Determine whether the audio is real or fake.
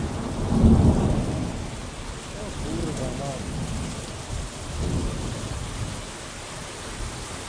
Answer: real